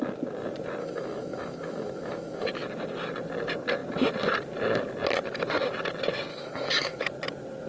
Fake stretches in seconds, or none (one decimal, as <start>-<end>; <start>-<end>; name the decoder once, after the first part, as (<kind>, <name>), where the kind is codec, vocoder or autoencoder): 0.8-2.5 (autoencoder, DAC-VAE); 6.3-7.0